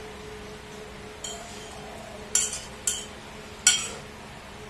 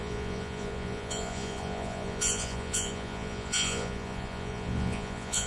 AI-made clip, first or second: second